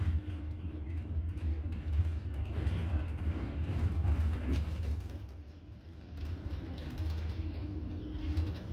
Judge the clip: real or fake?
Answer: fake